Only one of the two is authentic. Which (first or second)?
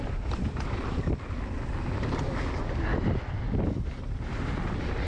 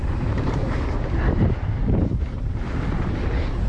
first